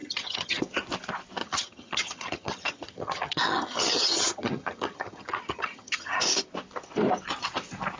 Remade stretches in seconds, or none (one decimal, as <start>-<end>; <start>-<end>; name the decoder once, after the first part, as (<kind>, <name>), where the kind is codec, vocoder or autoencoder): 0.0-0.6 (vocoder, HiFi-GAN); 1.4-6.2